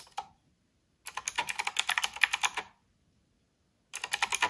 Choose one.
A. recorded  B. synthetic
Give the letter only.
A